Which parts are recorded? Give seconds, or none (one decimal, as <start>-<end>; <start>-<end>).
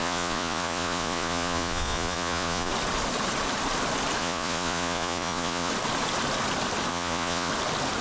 2.7-4.2; 5.7-6.9; 7.5-8.0